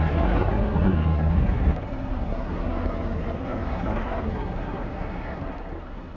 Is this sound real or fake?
fake